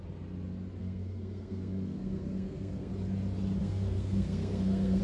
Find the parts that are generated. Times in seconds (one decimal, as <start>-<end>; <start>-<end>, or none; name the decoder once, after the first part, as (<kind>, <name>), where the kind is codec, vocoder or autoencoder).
0.8-2.9 (codec, SNAC); 3.6-5.0